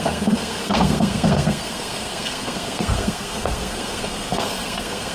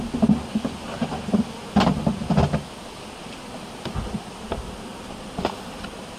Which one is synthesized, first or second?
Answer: first